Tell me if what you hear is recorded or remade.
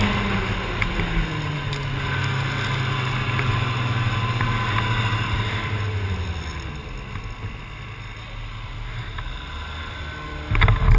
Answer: recorded